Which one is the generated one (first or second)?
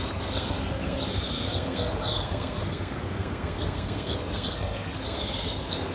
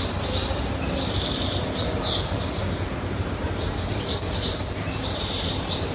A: first